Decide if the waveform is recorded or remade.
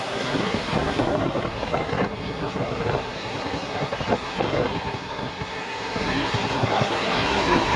remade